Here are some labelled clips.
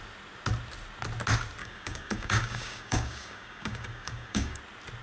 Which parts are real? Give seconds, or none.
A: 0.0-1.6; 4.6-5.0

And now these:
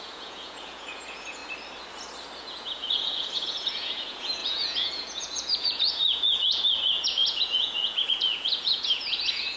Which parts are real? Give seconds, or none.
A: 1.4-2.4

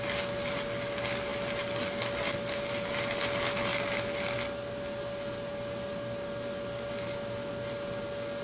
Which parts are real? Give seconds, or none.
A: 0.0-8.4